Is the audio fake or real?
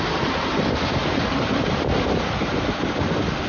fake